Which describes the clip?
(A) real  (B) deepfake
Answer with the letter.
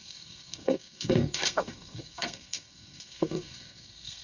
B